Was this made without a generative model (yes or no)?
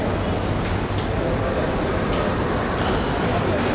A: yes